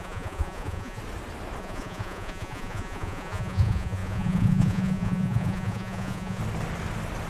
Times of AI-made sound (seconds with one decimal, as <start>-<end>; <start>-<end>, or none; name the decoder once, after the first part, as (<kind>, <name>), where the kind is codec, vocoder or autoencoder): 0.0-1.0 (vocoder, Vocos); 1.6-6.4